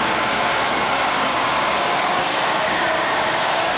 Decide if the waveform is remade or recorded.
remade